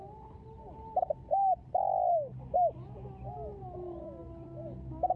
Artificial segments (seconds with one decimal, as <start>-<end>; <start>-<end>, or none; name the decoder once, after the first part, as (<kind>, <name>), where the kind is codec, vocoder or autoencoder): none